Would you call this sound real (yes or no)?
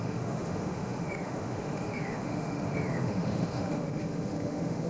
no